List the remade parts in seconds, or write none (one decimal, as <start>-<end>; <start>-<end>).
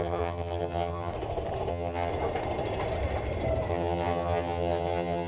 0.0-1.1; 1.7-2.1; 3.7-5.3